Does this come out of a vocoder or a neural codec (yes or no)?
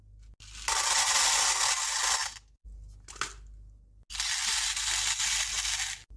no